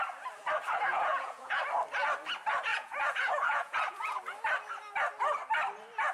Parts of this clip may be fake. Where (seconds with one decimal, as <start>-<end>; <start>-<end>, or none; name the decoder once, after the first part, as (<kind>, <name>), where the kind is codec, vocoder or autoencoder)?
0.9-1.6 (vocoder, Vocos); 2.7-4.2